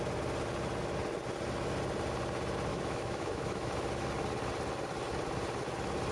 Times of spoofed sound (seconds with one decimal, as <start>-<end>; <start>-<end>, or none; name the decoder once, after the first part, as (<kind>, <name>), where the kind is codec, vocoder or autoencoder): 2.7-3.7 (autoencoder, DAC-VAE)

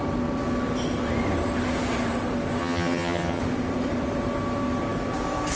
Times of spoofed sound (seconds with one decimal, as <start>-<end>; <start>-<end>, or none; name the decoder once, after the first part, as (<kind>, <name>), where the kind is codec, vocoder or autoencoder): 2.6-3.4 (vocoder, HiFi-GAN)

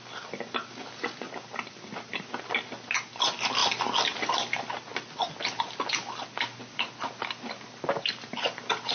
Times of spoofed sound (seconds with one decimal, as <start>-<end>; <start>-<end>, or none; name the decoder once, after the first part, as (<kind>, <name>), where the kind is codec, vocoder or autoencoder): none